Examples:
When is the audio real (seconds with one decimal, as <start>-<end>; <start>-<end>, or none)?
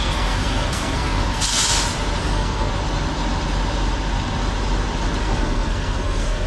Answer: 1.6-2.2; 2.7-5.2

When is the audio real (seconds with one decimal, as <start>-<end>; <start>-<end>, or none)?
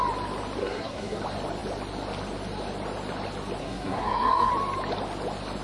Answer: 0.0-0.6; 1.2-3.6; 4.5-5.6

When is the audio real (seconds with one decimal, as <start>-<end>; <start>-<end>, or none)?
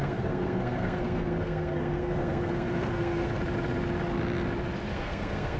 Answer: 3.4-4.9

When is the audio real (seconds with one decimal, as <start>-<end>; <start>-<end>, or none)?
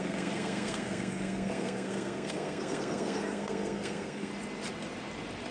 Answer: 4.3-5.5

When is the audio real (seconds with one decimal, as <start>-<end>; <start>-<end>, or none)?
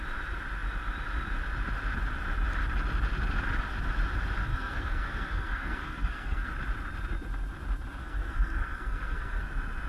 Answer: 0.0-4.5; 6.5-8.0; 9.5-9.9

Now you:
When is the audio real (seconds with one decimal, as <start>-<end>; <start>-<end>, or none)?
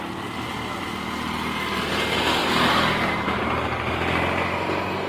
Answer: 0.0-5.1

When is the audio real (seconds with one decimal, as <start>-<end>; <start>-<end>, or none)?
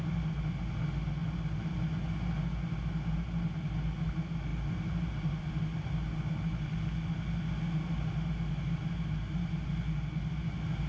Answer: 0.0-10.9